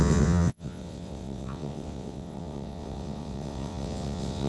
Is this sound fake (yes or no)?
yes